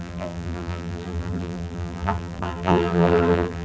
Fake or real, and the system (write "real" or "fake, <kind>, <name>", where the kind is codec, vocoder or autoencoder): fake, vocoder, BigVGAN v2